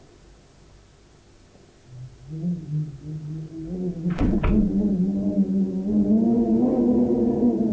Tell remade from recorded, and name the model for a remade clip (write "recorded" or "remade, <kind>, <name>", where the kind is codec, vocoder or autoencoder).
recorded